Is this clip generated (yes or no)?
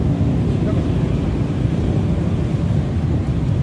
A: no